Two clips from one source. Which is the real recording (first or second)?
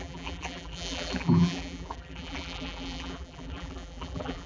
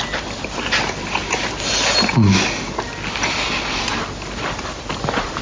second